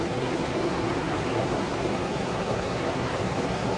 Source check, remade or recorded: remade